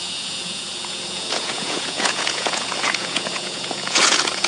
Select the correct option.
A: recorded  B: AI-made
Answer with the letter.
B